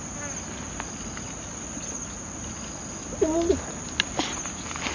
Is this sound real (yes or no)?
yes